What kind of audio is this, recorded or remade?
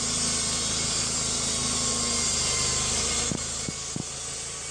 recorded